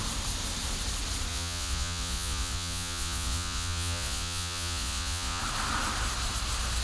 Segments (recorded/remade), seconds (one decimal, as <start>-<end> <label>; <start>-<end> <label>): 0.0-1.3 recorded; 1.3-5.4 remade; 5.4-6.8 recorded